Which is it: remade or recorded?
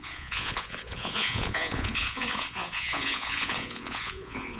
remade